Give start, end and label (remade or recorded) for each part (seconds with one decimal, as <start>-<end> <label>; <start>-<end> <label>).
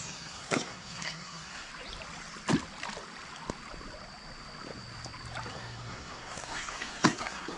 0.0-1.7 remade; 1.7-5.5 recorded; 5.5-7.6 remade